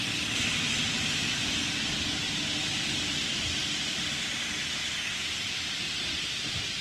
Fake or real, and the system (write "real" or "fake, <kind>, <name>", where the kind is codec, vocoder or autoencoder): real